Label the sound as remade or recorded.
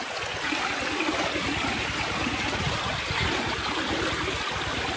recorded